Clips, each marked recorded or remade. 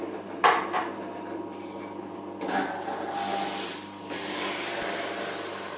recorded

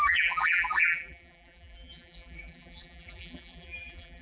remade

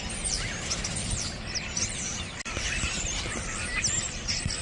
recorded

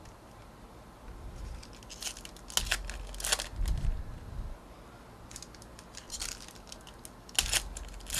recorded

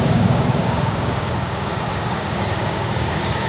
remade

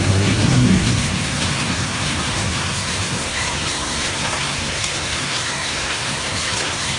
remade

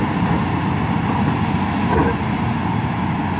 recorded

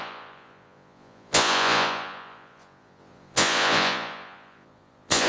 remade